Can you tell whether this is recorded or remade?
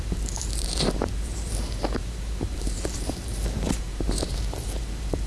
remade